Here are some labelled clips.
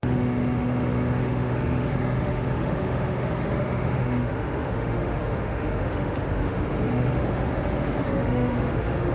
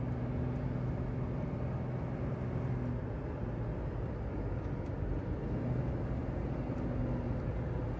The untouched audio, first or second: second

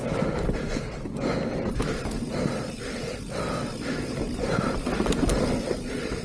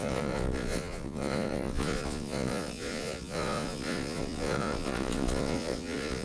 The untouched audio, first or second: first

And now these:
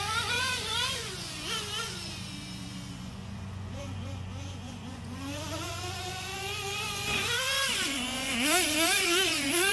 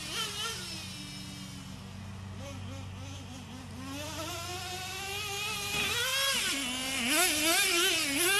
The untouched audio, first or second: second